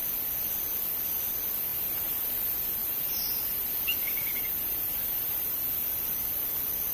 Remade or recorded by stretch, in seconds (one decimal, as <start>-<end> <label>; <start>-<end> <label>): 0.0-1.7 recorded; 1.7-2.3 remade; 2.3-2.8 recorded; 2.8-5.4 remade; 5.4-6.9 recorded